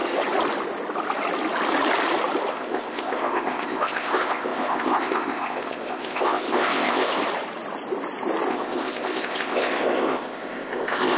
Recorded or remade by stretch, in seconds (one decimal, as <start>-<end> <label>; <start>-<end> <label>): 0.0-2.5 recorded; 2.5-7.2 remade; 7.2-8.5 recorded; 8.5-11.2 remade